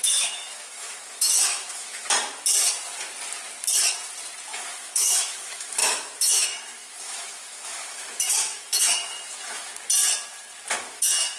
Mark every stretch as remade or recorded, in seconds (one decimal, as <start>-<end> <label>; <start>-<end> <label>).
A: 0.0-2.0 remade; 2.0-4.5 recorded; 4.5-9.7 remade; 9.7-10.7 recorded; 10.7-11.4 remade